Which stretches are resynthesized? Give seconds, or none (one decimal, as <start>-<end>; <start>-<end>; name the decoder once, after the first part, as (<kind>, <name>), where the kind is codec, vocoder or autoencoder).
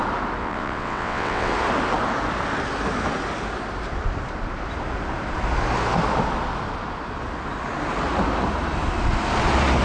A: 0.4-1.5 (vocoder, WaveNeXt)